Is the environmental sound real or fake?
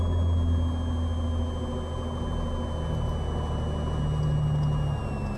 real